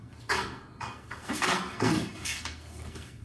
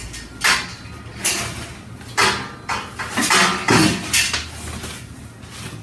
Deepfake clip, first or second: first